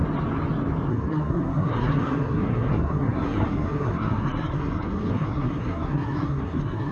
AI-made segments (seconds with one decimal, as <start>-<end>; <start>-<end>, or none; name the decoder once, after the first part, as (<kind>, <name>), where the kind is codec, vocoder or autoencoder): 0.9-6.9 (codec, SNAC)